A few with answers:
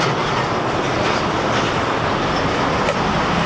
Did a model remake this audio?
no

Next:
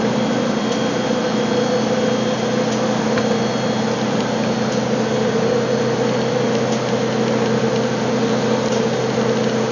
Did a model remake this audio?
no